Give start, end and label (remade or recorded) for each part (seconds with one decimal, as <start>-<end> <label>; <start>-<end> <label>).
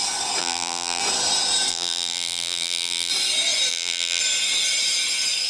0.0-0.4 recorded; 0.4-1.0 remade; 1.0-1.7 recorded; 1.7-3.1 remade; 3.1-3.7 recorded; 3.7-4.2 remade; 4.2-5.5 recorded